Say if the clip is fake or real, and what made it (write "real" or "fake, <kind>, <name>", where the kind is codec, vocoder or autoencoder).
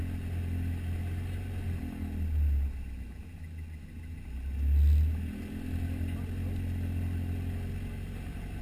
real